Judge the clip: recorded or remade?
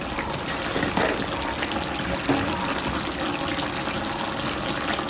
recorded